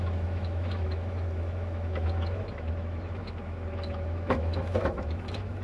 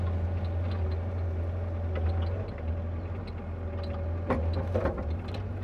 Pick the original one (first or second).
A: second